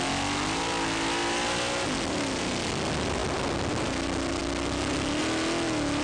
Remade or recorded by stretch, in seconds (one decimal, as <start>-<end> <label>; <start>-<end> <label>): 0.0-6.0 recorded